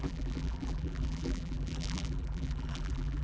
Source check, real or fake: fake